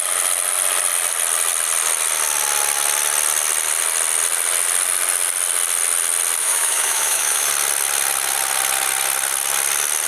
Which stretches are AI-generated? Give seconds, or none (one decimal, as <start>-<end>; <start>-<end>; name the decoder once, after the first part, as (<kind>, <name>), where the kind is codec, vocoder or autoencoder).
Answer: 6.4-7.5 (autoencoder, DAC-VAE)